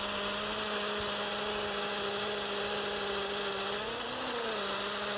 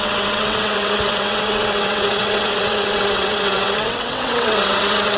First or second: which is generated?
second